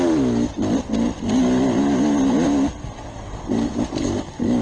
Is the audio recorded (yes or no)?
yes